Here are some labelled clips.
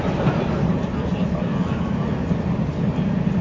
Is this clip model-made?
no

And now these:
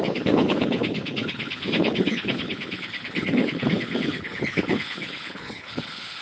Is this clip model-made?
yes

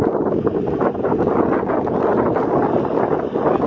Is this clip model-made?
no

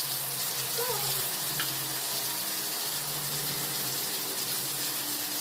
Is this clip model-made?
yes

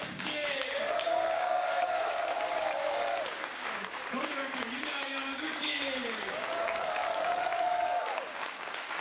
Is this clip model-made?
yes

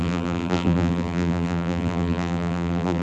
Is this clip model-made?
yes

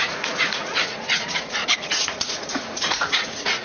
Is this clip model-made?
yes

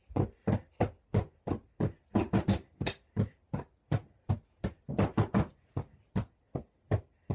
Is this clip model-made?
no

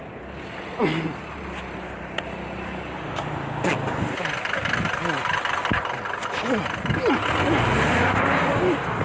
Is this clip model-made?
no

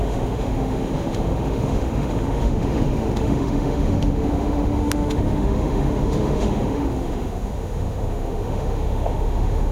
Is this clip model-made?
yes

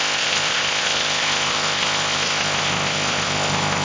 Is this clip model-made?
yes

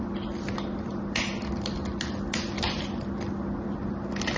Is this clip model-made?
no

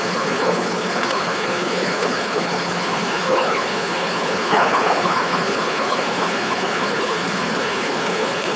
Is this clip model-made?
yes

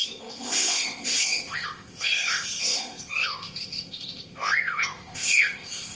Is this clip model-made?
yes